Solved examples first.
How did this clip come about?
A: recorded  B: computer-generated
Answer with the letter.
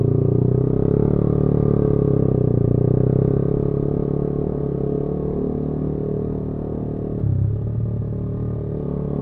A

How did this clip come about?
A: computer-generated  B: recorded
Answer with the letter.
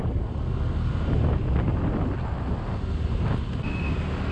B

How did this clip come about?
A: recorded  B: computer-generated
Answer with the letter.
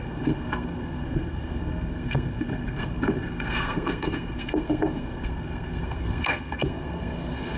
B